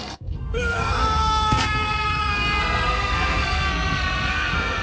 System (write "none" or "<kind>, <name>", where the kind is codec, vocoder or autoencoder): codec, SNAC